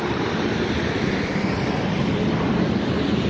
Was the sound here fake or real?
real